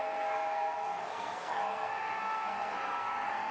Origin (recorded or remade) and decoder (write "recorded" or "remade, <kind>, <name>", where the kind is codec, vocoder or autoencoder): remade, codec, SNAC